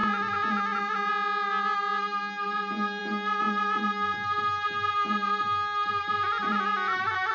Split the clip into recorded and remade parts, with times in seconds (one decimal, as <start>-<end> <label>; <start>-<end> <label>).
0.0-7.3 recorded